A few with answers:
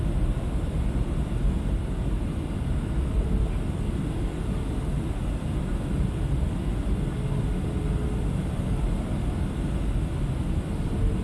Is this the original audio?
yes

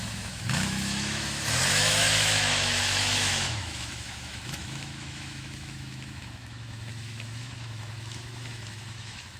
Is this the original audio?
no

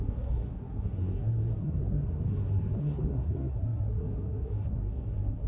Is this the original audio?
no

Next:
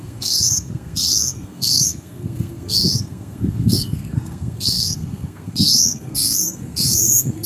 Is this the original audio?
no